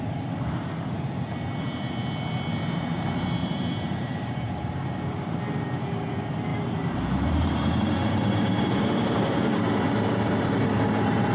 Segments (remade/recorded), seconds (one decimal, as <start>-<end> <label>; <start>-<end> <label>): 0.0-3.4 recorded; 3.4-5.4 remade; 5.4-6.5 recorded; 6.5-11.3 remade